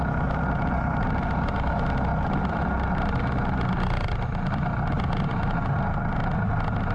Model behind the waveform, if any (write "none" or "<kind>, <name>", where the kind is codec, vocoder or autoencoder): none